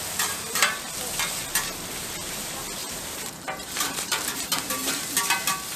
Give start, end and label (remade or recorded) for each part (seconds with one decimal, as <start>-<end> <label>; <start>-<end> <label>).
0.0-2.8 recorded; 2.8-5.0 remade; 5.0-5.8 recorded